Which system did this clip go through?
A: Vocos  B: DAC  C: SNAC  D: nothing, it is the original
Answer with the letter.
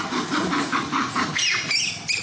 D